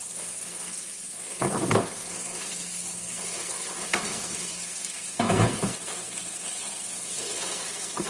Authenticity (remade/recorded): remade